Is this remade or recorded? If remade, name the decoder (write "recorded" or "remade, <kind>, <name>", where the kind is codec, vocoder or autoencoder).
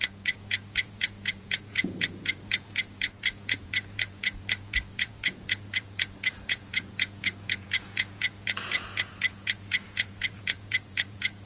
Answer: remade, vocoder, Vocos